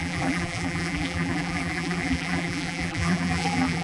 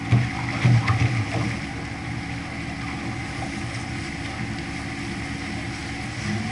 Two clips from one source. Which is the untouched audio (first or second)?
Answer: second